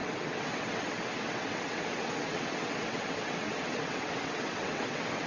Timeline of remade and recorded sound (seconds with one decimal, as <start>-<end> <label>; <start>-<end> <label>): 0.0-5.3 remade